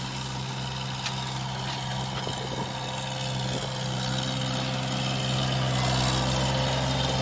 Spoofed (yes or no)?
no